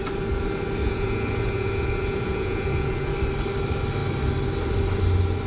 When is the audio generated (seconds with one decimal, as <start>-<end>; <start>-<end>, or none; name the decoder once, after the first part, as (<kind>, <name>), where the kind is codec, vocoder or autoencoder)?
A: 0.8-3.1 (vocoder, Vocos)

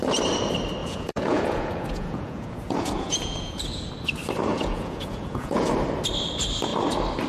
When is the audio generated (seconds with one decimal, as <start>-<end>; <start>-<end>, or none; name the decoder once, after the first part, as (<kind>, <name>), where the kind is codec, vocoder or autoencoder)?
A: 0.8-3.9 (vocoder, Vocos); 4.5-5.7

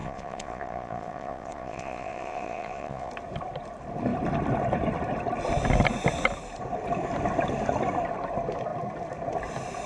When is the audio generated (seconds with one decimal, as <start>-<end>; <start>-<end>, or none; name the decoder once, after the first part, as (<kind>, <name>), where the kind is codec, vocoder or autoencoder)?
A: 0.0-3.1 (vocoder, Vocos)

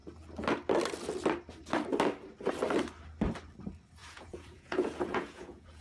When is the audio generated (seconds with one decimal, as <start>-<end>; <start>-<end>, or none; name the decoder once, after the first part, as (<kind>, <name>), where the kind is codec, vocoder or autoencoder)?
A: 4.0-5.8 (vocoder, Vocos)

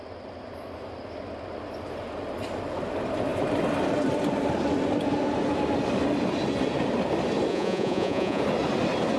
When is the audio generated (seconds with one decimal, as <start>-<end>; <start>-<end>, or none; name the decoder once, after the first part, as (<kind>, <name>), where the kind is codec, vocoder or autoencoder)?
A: 7.5-8.4 (vocoder, Vocos)

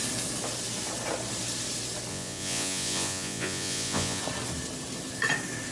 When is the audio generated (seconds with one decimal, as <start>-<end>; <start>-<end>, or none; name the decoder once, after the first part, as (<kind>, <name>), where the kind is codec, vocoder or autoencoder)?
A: 2.1-4.2 (vocoder, Vocos)

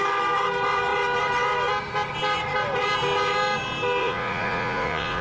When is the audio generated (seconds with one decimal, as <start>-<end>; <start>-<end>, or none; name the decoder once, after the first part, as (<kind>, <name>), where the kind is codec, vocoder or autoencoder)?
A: 4.0-5.2 (vocoder, Vocos)